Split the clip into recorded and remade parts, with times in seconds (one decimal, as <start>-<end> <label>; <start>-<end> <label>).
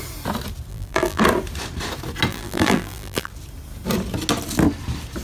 0.0-0.7 recorded; 0.7-1.2 remade; 1.2-2.3 recorded; 2.3-3.3 remade; 3.3-5.2 recorded